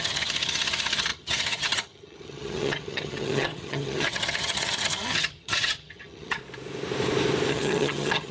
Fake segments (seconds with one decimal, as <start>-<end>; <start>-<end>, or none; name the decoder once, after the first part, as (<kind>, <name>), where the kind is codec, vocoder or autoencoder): 0.0-6.4 (vocoder, HiFi-GAN); 7.5-8.3